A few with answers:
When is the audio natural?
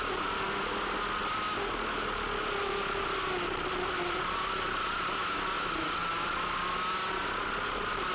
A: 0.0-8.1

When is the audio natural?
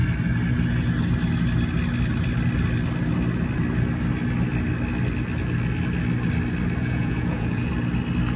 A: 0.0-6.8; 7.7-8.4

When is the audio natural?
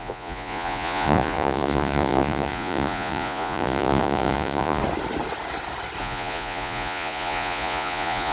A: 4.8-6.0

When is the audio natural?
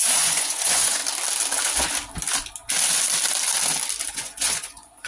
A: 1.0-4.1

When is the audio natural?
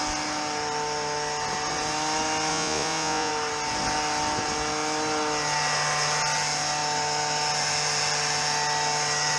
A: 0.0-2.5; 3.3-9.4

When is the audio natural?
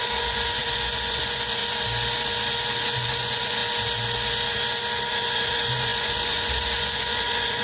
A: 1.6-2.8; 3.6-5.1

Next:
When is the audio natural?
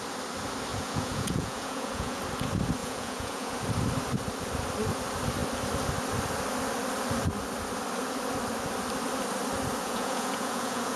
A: 0.0-0.7; 2.2-2.8; 3.5-9.8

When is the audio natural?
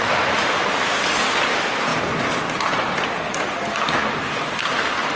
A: 0.0-5.2